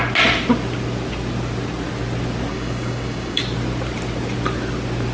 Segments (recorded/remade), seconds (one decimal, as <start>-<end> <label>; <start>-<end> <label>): 0.0-2.5 recorded; 2.5-3.4 remade; 3.4-5.1 recorded